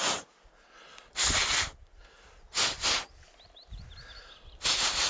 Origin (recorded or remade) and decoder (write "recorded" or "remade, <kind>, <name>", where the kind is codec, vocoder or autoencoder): recorded